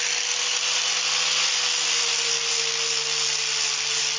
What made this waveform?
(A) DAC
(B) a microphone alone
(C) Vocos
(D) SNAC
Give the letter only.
B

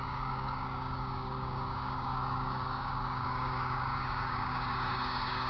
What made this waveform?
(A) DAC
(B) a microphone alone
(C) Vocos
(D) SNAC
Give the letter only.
A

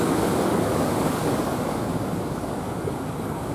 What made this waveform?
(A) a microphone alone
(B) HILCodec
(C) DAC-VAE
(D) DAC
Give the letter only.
D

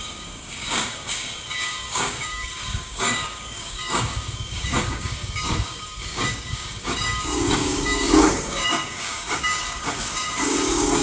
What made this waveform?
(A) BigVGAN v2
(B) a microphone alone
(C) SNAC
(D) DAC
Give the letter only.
D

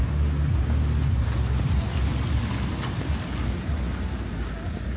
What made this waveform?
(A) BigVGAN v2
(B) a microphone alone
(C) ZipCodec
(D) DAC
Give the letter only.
B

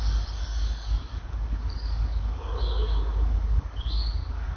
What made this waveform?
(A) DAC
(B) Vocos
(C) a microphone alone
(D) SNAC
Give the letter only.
A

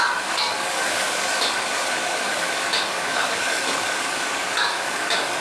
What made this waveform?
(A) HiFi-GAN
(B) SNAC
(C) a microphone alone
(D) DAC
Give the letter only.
D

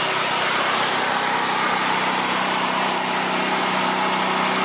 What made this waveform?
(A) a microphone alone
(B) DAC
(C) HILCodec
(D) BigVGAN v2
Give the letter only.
A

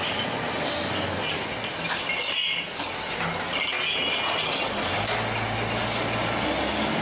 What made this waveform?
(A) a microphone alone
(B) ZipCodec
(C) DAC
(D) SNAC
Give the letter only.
A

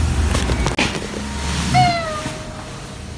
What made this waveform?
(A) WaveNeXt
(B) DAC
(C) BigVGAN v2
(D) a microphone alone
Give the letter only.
D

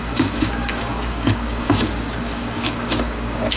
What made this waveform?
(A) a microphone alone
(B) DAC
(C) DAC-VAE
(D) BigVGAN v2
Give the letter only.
B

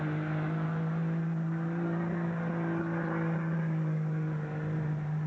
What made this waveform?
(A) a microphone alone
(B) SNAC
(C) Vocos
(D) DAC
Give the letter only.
A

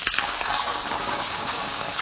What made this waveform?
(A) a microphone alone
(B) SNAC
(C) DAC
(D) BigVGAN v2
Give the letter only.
C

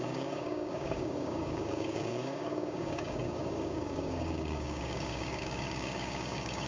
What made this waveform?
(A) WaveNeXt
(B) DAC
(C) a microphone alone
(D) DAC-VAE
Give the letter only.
B